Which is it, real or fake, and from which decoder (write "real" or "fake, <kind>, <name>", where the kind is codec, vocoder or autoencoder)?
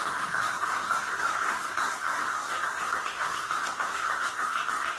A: fake, codec, SNAC